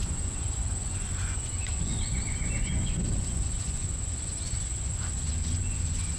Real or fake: fake